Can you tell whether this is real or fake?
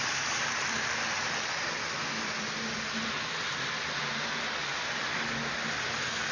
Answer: real